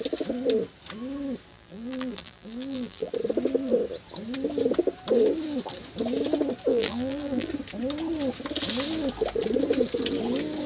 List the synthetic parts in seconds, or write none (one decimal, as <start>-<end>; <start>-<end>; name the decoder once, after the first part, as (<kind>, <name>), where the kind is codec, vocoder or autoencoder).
1.5-3.1 (vocoder, BigVGAN v2); 6.7-7.5